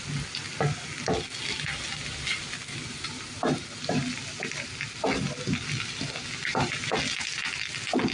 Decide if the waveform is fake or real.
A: real